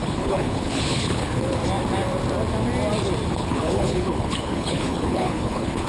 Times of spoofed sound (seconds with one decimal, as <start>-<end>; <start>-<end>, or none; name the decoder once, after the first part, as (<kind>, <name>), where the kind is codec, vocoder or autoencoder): 0.0-1.6 (codec, HILCodec); 3.3-5.9

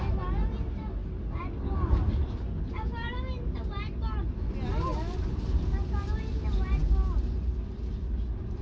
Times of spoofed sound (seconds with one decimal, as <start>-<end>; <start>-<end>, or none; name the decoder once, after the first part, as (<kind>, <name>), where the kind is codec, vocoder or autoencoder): none

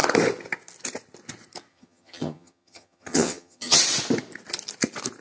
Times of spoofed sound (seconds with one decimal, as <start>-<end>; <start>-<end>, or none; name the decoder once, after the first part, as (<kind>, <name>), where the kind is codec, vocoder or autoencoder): 1.7-3.8 (vocoder, HiFi-GAN)